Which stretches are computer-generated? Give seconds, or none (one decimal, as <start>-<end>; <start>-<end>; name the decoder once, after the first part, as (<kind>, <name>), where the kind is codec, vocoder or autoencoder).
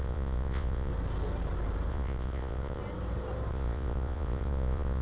0.0-0.9 (vocoder, Vocos); 1.9-2.8; 3.5-5.0